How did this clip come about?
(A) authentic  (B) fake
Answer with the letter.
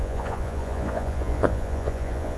B